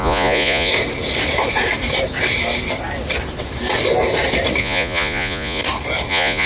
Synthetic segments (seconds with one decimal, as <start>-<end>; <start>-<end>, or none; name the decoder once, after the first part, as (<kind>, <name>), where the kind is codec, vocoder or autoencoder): 0.0-0.7 (vocoder, Vocos); 4.6-5.6; 6.1-6.5